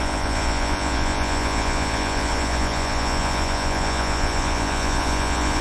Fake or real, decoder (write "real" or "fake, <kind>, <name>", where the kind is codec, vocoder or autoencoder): fake, vocoder, Vocos